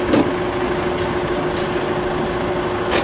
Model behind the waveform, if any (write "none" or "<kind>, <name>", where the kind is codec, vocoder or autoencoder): none